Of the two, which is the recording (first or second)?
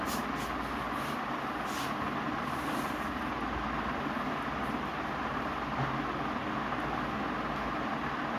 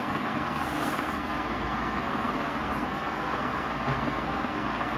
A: first